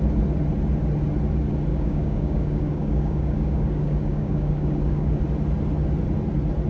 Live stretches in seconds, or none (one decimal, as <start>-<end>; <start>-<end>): 0.0-1.7; 5.2-6.7